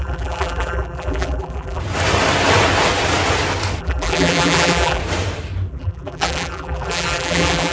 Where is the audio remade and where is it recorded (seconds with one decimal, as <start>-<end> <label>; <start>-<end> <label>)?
0.0-1.8 remade; 1.8-3.8 recorded; 3.8-5.0 remade; 5.0-5.7 recorded; 5.7-7.7 remade

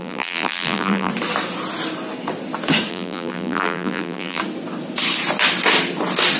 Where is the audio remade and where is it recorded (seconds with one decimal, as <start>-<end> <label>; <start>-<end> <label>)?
0.0-1.1 remade; 1.1-2.9 recorded; 2.9-4.4 remade; 4.4-6.4 recorded

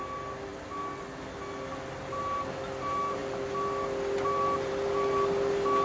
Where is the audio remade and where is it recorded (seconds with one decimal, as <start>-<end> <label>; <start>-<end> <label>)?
0.0-5.8 recorded

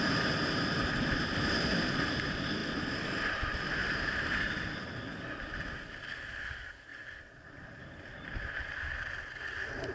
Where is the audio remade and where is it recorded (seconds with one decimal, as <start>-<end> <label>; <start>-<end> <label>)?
0.0-3.8 recorded; 3.8-4.4 remade; 4.4-6.9 recorded; 6.9-8.5 remade; 8.5-9.9 recorded

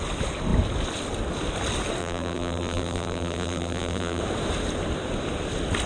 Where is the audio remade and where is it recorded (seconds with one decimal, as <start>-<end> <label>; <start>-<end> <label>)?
0.0-2.0 recorded; 2.0-4.2 remade; 4.2-5.9 recorded